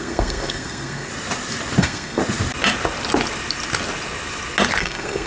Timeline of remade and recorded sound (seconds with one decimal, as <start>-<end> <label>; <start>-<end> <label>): 0.0-1.1 remade; 1.1-1.8 recorded; 1.8-2.2 remade; 2.2-4.8 recorded; 4.8-5.3 remade